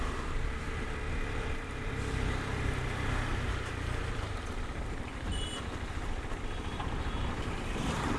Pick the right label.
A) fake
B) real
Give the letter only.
A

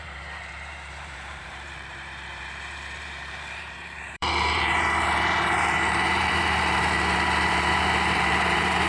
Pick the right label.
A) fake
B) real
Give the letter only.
A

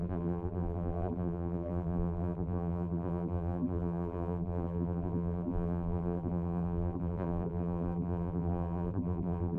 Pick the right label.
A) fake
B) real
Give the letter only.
A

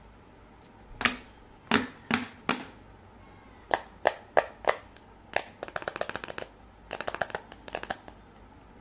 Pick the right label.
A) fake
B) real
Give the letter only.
B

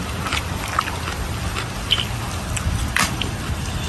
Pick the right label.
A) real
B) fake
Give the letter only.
B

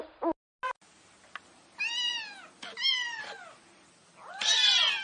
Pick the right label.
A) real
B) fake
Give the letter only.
A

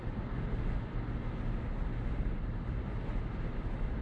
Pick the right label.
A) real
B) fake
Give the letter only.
A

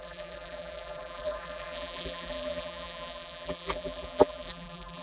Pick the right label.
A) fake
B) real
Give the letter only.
A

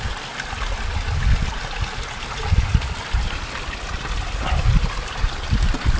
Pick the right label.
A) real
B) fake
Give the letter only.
A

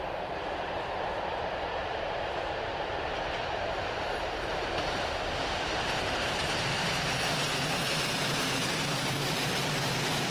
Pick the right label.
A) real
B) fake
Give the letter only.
B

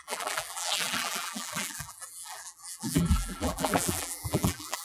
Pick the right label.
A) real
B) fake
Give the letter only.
B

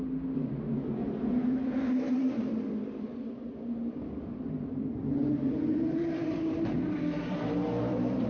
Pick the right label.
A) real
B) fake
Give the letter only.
B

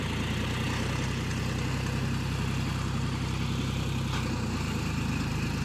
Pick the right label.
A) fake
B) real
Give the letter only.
B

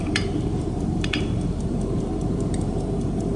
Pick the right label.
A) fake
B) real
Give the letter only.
A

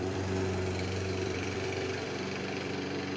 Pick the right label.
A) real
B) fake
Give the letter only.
B